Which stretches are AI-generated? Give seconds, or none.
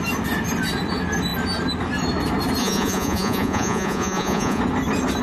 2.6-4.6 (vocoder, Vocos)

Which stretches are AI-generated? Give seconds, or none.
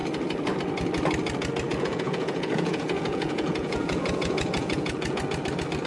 1.7-5.2 (vocoder, Vocos)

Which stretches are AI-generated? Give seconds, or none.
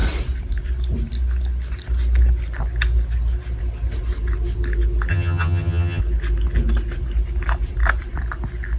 5.1-6.0 (vocoder, HiFi-GAN)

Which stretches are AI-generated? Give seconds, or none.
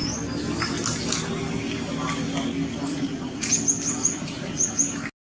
2.9-3.5 (vocoder, Vocos); 4.0-4.7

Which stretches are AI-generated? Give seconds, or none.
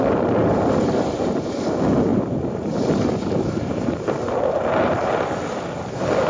0.4-1.6 (vocoder, BigVGAN v2); 2.1-4.0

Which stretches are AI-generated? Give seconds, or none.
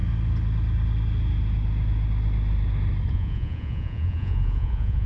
3.1-5.1 (vocoder, Vocos)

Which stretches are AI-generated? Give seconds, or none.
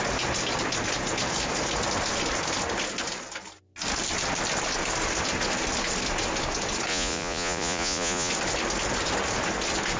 6.9-8.3 (vocoder, Vocos)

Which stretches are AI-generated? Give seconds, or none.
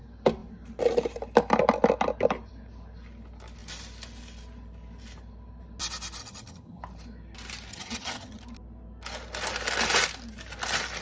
6.2-6.8 (vocoder, HiFi-GAN); 7.7-8.4